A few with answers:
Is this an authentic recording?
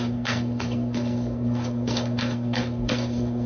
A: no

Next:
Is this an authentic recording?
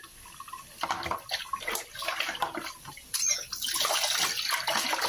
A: yes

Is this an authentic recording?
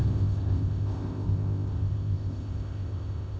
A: no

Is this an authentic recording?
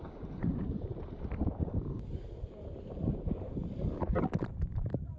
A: no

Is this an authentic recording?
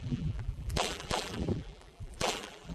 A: no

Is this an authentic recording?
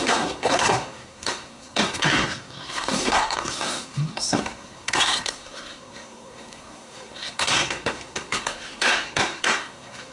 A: no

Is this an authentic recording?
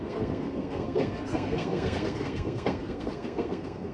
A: no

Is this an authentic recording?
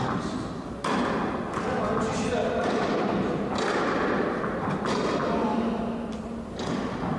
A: yes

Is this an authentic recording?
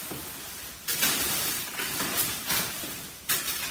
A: yes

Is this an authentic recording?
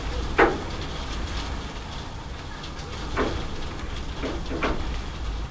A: yes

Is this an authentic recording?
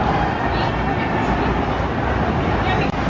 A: yes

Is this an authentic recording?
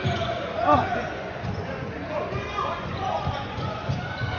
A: no